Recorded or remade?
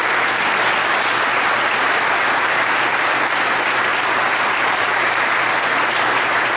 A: recorded